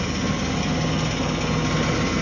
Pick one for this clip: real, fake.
real